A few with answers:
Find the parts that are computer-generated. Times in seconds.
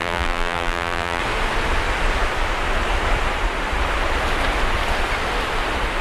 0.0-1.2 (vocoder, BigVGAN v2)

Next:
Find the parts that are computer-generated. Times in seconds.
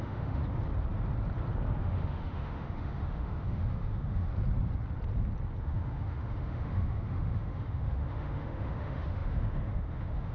0.0-0.4 (autoencoder, DAC-VAE); 1.8-4.3; 5.6-10.3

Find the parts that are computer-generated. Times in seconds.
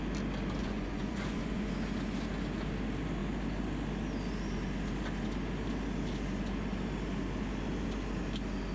0.6-1.7 (vocoder, Vocos)